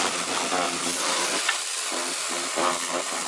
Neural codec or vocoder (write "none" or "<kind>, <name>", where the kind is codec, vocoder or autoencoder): none